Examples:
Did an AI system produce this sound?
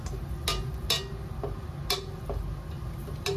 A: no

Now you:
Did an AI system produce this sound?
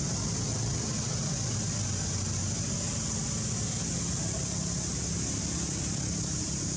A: no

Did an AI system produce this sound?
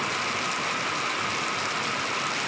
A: no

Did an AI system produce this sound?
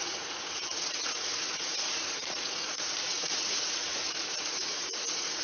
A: yes